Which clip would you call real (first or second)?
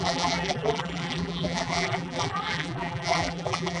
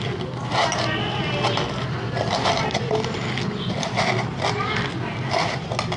second